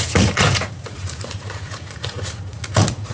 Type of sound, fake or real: fake